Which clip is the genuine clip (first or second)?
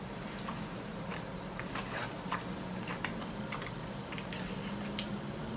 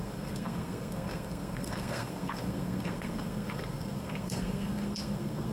first